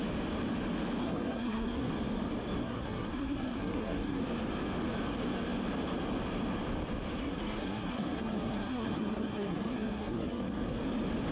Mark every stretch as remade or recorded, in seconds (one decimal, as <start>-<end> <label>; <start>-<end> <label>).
0.0-1.0 recorded; 1.0-1.9 remade; 1.9-2.6 recorded; 2.6-4.2 remade; 4.2-7.2 recorded; 7.2-10.8 remade; 10.8-11.3 recorded